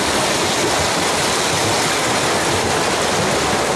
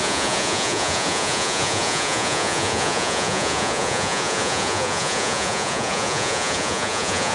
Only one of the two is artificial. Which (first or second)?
second